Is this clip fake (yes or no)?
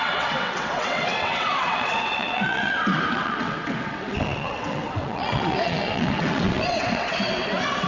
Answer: yes